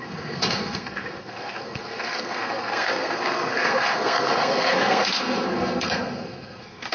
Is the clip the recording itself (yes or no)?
no